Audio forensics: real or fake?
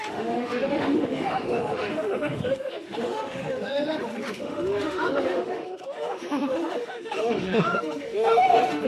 fake